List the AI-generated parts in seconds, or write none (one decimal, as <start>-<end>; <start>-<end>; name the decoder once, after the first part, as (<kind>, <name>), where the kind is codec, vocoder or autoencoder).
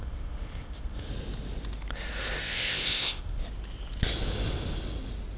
0.0-1.1 (codec, ZipCodec); 2.4-3.4